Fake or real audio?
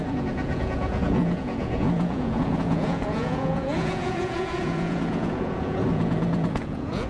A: fake